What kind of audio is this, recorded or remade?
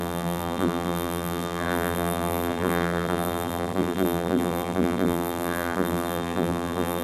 remade